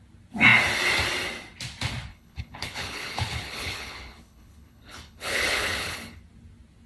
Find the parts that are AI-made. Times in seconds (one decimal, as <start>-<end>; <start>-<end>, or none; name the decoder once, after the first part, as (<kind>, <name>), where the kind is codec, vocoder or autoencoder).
2.1-6.2 (codec, HILCodec)